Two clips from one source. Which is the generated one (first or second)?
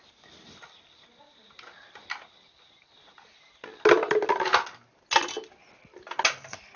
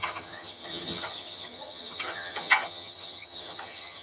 second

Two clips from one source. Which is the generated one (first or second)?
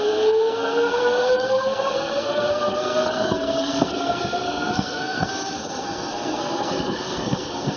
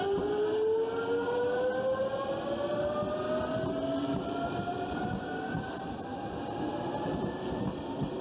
first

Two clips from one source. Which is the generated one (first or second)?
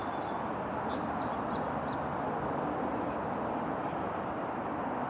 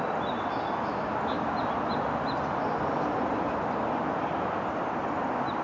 first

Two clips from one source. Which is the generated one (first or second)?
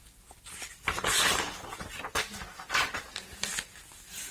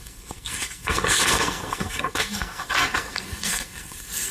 second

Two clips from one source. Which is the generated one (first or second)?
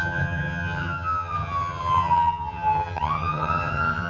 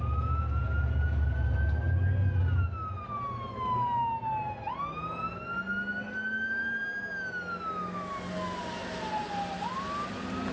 first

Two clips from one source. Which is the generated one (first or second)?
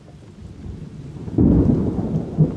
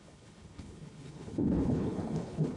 second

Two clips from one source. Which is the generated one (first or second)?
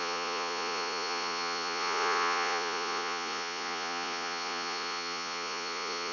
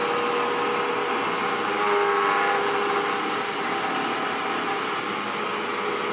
first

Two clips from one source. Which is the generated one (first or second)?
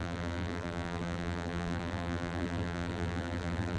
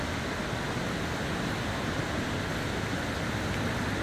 first